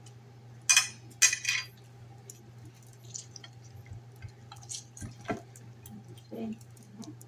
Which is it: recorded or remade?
recorded